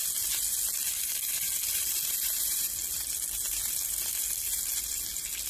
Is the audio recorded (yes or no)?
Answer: yes